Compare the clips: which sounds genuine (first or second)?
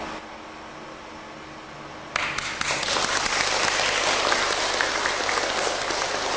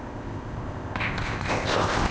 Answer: first